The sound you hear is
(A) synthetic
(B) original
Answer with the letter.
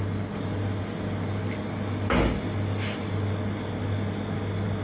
B